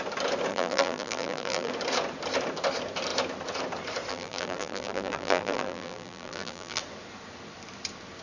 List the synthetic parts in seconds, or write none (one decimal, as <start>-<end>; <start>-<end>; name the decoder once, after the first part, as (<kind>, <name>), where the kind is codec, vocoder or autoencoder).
0.5-1.7 (vocoder, BigVGAN v2); 4.1-6.8